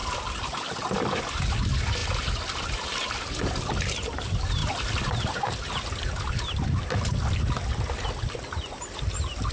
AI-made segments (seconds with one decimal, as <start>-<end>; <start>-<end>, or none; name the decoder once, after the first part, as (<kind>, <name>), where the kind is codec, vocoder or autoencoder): none